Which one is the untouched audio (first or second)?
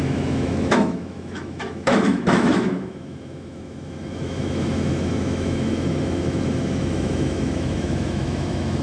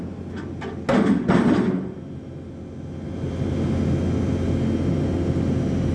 second